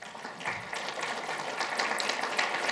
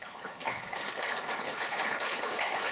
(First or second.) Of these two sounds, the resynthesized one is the second